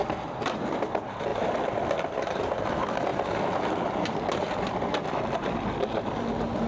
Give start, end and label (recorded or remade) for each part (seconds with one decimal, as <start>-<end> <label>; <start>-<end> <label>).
0.0-6.7 recorded